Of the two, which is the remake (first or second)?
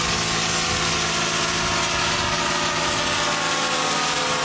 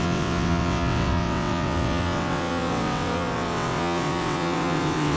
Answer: second